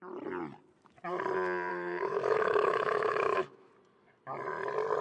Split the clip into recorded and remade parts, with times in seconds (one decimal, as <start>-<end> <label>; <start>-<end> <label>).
0.0-1.7 recorded; 1.7-3.7 remade; 3.7-5.0 recorded